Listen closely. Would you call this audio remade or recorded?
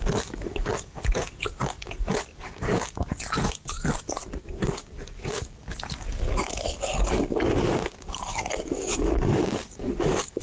remade